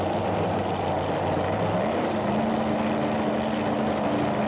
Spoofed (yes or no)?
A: no